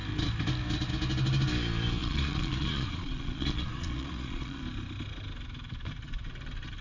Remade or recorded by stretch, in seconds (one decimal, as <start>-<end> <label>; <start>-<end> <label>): 0.0-2.0 recorded; 2.0-4.6 remade; 4.6-6.8 recorded